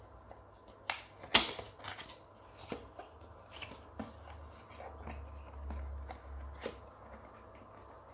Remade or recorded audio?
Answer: recorded